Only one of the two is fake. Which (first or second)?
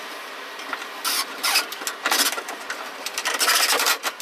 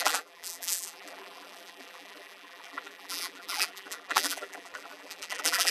second